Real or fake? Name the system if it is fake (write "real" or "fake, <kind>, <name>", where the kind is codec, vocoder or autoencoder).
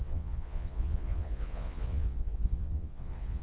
fake, vocoder, Vocos